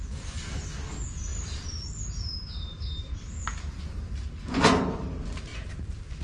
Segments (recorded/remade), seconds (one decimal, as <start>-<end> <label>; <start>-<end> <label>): 0.0-1.3 recorded; 1.3-3.1 remade; 3.1-5.5 recorded; 5.5-6.2 remade